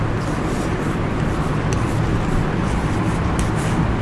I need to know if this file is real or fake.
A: real